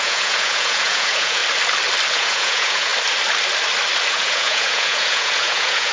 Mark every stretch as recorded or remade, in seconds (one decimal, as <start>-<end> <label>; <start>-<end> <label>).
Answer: 0.0-1.4 remade; 1.4-2.1 recorded; 2.1-2.9 remade; 2.9-4.1 recorded; 4.1-5.9 remade